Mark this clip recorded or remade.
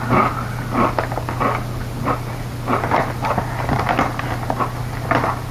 recorded